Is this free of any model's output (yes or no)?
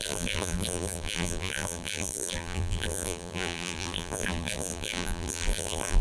no